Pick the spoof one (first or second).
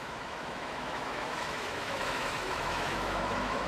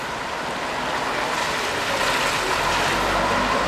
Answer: first